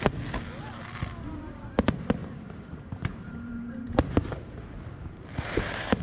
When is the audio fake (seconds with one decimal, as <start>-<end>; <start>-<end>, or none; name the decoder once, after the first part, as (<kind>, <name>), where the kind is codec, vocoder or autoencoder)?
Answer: 2.2-6.0 (vocoder, BigVGAN v2)